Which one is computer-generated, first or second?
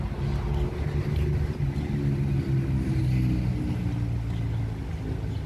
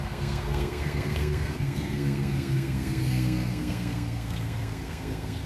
second